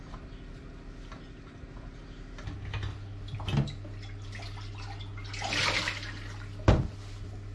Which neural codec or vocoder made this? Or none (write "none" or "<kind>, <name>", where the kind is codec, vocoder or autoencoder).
none